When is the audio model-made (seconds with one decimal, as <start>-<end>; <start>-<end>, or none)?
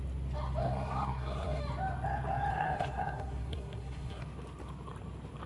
0.6-1.6; 2.5-4.2